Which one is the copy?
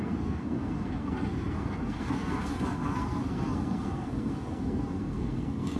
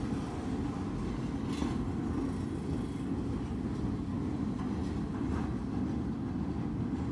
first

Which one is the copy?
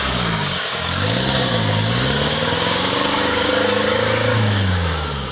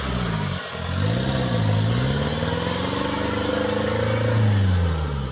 first